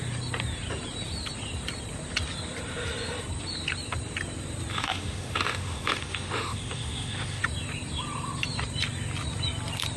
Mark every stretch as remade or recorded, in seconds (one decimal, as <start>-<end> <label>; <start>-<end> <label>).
0.0-4.7 recorded; 4.7-7.4 remade; 7.4-10.0 recorded